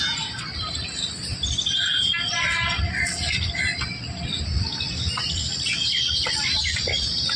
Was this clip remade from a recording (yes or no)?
no